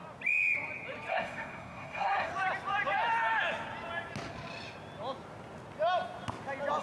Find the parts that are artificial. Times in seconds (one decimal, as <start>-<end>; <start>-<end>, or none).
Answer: 1.1-2.3